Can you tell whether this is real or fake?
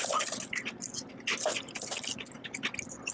real